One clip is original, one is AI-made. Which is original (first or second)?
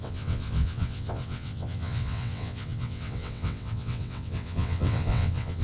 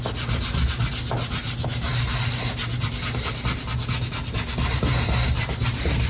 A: second